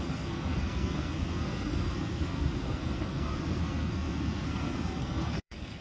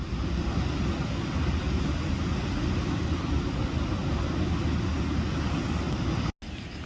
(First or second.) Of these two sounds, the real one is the second